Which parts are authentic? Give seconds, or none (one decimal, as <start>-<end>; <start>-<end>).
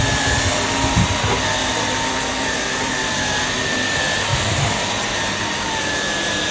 0.0-1.6; 2.9-4.3; 4.9-6.5